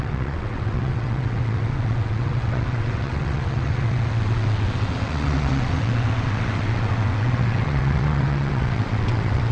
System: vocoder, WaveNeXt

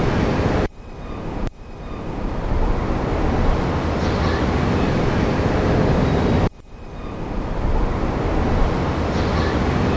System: none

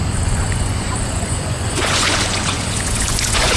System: vocoder, Vocos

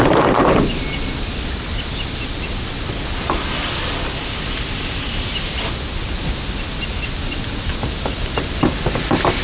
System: none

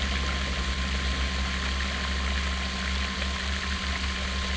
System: none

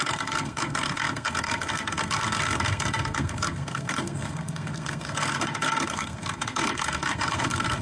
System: codec, SNAC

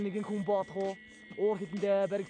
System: none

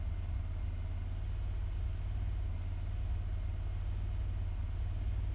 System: none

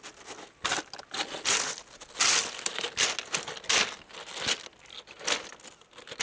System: none